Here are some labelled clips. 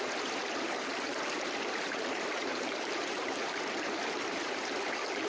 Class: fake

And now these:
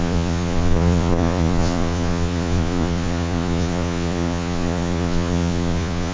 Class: fake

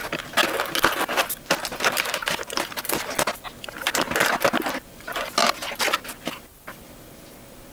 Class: real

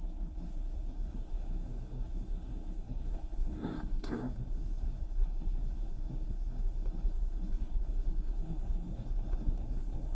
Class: fake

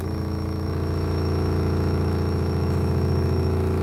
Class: fake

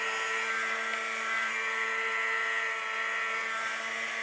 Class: real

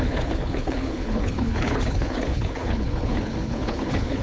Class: fake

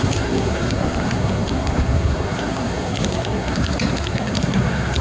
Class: fake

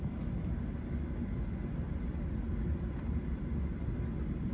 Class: real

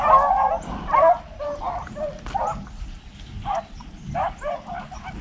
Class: real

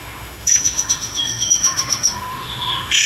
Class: fake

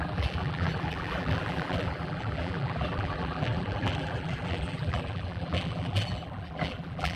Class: fake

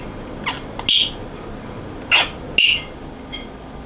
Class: real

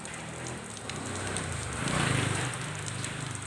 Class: real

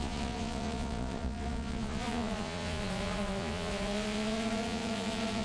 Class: fake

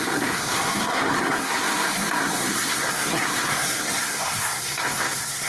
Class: fake